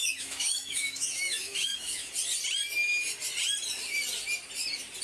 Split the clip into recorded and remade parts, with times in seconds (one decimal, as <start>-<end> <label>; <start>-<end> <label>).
0.0-2.1 remade; 2.1-5.0 recorded